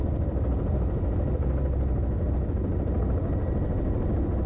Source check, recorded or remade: recorded